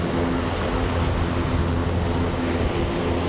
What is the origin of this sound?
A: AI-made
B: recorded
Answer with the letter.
B